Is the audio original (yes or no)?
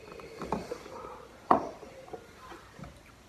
yes